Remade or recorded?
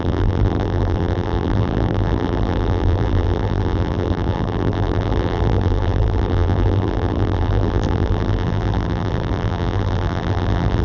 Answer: remade